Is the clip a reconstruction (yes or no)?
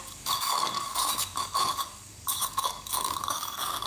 yes